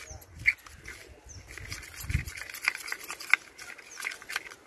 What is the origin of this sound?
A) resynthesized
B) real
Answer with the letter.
B